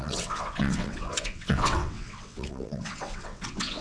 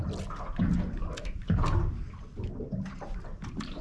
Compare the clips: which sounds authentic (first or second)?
second